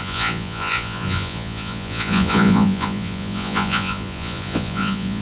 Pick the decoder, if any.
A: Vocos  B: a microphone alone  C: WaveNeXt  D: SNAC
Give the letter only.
A